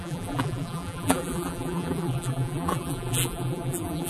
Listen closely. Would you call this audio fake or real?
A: fake